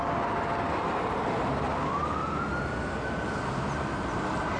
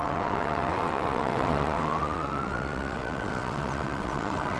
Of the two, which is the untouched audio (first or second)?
first